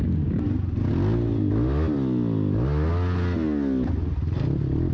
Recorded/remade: recorded